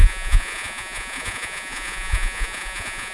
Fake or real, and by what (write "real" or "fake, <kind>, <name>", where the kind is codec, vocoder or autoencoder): fake, vocoder, Vocos